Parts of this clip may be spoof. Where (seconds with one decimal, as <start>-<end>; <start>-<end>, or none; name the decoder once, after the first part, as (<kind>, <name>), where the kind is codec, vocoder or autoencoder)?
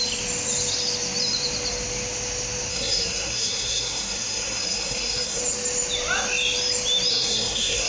2.7-5.4 (codec, SNAC); 7.1-7.9